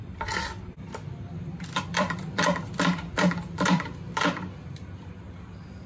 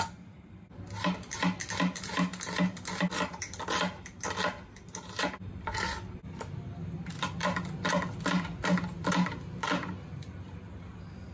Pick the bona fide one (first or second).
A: second